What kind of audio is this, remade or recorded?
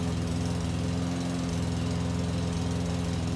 recorded